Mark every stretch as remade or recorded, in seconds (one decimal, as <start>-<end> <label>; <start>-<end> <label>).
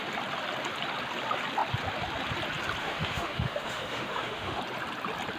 0.0-2.8 recorded; 2.8-4.6 remade; 4.6-5.4 recorded